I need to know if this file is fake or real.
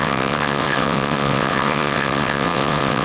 fake